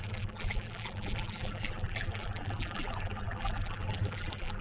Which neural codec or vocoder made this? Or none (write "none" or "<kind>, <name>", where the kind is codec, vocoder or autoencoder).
vocoder, BigVGAN v2